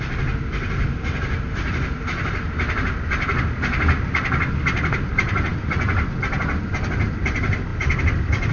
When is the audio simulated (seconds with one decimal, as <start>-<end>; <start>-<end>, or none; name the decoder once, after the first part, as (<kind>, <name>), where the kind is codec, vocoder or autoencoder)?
none